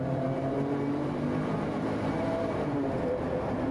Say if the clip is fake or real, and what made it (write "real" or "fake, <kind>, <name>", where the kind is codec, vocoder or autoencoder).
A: fake, vocoder, BigVGAN v2